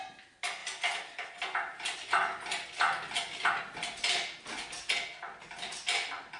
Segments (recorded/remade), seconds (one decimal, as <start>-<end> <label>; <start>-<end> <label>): 0.0-6.4 recorded